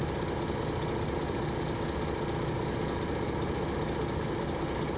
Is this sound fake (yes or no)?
no